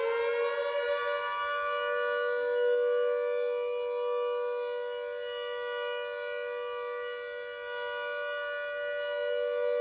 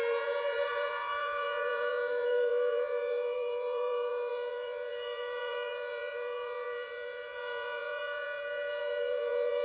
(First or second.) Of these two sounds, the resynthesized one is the second